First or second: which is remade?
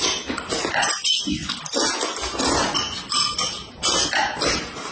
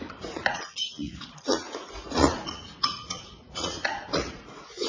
second